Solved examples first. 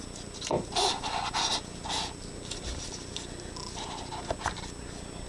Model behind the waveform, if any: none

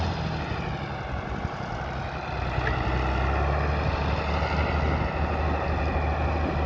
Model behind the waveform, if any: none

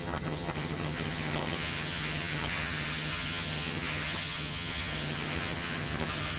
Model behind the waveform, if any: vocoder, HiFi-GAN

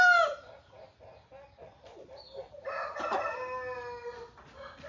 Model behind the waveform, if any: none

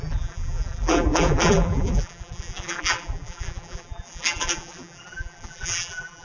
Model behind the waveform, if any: vocoder, BigVGAN v2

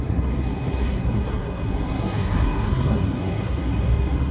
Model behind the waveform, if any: codec, SNAC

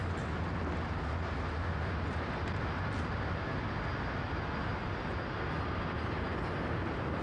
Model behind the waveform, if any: none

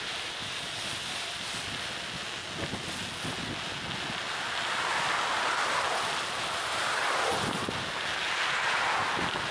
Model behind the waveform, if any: none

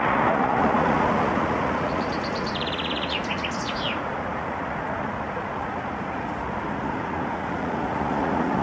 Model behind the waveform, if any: vocoder, Vocos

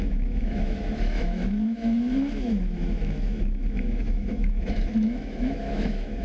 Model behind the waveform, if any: autoencoder, DAC-VAE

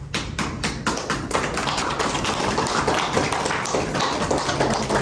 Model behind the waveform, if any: none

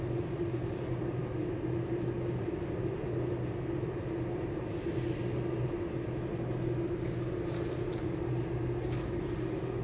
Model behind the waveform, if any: none